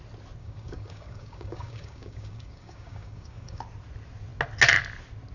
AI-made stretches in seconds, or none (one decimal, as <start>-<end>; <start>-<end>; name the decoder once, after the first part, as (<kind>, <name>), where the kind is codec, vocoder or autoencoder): 0.4-3.6 (codec, DAC)

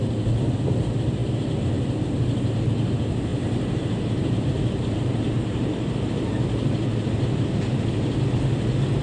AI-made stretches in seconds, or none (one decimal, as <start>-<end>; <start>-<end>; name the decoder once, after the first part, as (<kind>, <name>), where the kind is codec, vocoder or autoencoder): 3.3-6.1 (vocoder, BigVGAN v2)

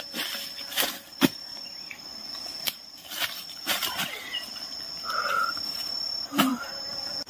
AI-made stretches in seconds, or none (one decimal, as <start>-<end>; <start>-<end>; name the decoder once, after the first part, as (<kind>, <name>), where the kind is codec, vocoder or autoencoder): none

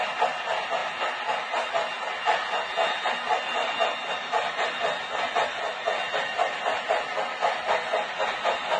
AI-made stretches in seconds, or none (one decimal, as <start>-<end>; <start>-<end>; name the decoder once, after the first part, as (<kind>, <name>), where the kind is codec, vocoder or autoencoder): none

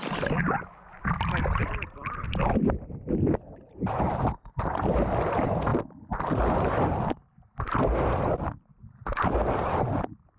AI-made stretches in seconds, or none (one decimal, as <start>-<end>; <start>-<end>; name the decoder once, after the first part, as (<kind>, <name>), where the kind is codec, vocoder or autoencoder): none

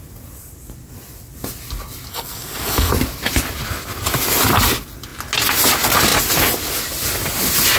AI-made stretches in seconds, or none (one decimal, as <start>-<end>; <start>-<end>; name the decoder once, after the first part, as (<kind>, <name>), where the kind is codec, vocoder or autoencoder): 2.1-2.9 (codec, SNAC)

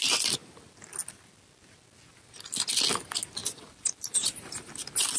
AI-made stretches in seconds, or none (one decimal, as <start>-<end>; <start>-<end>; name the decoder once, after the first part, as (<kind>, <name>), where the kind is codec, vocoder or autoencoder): 3.4-5.2 (vocoder, BigVGAN v2)

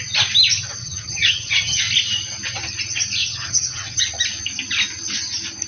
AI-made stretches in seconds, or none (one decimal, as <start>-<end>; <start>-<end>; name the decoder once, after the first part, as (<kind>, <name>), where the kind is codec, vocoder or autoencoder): 0.8-1.8 (vocoder, HiFi-GAN); 3.2-4.0